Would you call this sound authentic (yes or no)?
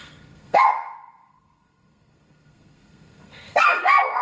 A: no